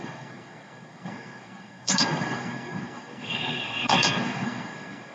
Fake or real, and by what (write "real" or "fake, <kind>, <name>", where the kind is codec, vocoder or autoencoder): fake, codec, SNAC